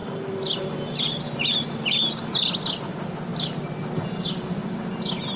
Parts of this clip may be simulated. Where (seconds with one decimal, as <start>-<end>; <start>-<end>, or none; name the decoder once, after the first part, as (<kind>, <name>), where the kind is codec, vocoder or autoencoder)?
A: none